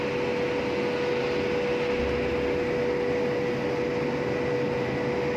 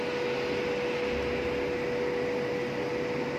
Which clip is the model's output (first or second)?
second